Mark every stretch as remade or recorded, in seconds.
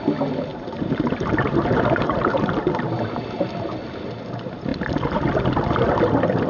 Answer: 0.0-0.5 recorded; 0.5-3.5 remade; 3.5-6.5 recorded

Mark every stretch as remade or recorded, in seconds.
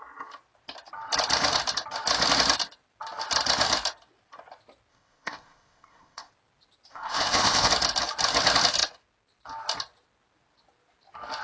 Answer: 0.0-4.9 recorded; 4.9-6.3 remade; 6.3-6.9 recorded; 6.9-7.7 remade; 7.7-11.4 recorded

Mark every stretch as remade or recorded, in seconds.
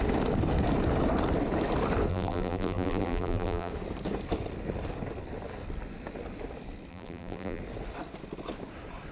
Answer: 0.0-2.1 recorded; 2.1-3.7 remade; 3.7-6.9 recorded; 6.9-7.6 remade; 7.6-9.1 recorded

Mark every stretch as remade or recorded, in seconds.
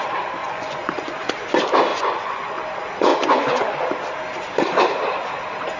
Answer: 0.0-0.4 recorded; 0.4-1.3 remade; 1.3-1.9 recorded; 1.9-2.6 remade; 2.6-3.1 recorded; 3.1-3.8 remade; 3.8-5.8 recorded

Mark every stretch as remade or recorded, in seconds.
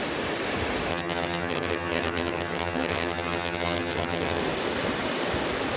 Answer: 0.0-0.9 recorded; 0.9-4.4 remade; 4.4-5.8 recorded